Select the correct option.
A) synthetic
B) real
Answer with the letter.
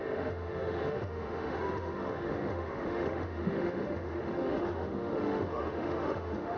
A